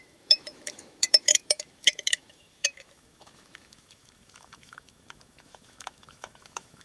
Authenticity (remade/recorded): remade